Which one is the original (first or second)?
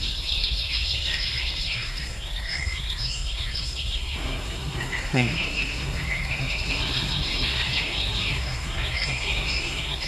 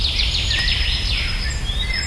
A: second